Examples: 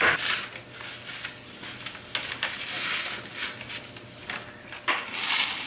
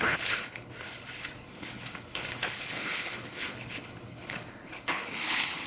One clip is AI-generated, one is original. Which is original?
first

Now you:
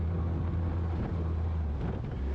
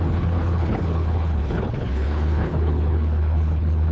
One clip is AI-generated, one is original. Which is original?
first